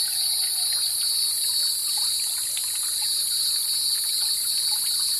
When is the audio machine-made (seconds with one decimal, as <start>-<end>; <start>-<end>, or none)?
1.8-2.5; 4.4-5.2